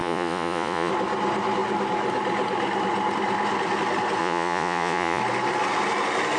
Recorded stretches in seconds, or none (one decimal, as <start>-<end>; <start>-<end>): 0.9-4.2; 5.2-6.4